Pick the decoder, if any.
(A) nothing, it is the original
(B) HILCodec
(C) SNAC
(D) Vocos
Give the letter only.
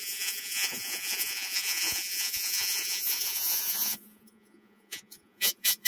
D